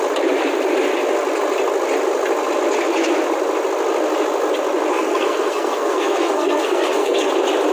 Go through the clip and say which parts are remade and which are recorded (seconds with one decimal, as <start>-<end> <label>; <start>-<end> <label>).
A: 0.0-4.9 recorded; 4.9-7.3 remade; 7.3-7.7 recorded